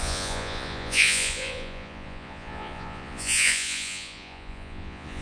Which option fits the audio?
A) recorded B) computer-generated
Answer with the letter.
B